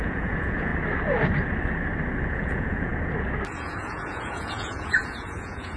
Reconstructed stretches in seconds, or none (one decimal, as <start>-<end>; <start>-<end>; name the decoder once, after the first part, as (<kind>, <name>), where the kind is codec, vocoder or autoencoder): 0.0-0.7 (vocoder, Vocos); 2.3-2.9; 3.5-5.8